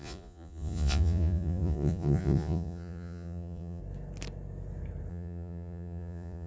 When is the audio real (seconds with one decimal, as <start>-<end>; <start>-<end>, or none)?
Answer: 3.8-5.1